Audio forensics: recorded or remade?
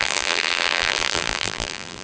remade